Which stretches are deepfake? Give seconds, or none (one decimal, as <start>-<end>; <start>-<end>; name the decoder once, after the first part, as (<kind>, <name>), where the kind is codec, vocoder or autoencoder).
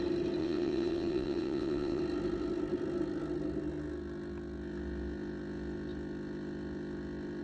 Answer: 0.4-2.0 (vocoder, WaveNeXt)